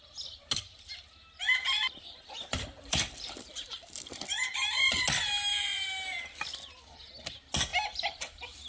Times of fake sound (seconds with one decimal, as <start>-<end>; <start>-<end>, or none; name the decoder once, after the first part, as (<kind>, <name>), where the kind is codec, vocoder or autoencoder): 2.2-4.5 (vocoder, BigVGAN v2); 7.7-8.7